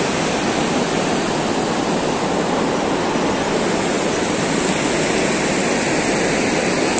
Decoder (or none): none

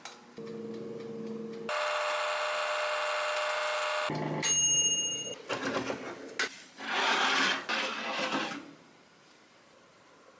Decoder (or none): none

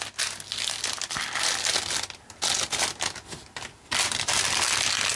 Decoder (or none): none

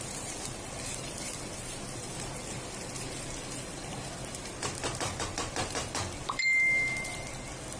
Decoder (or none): vocoder, BigVGAN v2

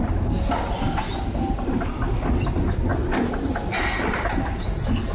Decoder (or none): none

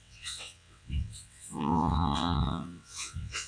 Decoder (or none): vocoder, WaveNeXt